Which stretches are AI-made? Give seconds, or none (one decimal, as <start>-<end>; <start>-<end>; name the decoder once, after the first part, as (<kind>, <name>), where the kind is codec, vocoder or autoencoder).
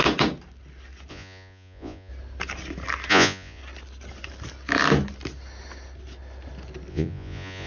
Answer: 1.1-2.1 (vocoder, Vocos); 3.1-3.6; 6.9-7.7